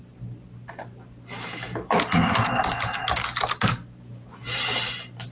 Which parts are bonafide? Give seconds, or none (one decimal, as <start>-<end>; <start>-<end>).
0.0-5.3